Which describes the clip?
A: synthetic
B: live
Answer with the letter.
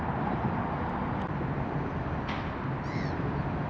B